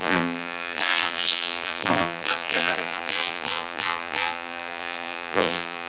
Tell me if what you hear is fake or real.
fake